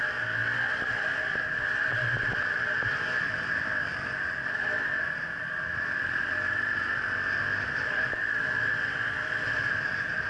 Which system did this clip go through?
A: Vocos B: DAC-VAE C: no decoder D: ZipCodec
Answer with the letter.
C